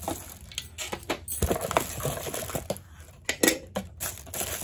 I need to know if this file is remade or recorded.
recorded